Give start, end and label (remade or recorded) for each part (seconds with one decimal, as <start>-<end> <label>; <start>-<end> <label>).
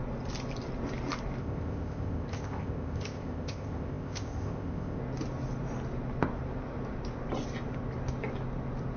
0.0-1.4 recorded; 1.4-5.0 remade; 5.0-9.0 recorded